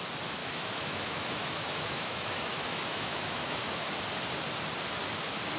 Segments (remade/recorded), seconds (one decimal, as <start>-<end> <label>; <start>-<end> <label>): 0.0-0.4 recorded; 0.4-3.8 remade; 3.8-5.6 recorded